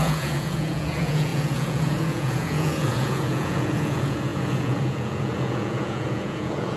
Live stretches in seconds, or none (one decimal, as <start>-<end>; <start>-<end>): none